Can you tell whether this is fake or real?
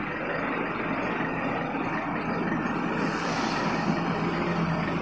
real